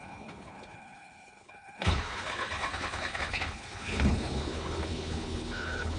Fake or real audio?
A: fake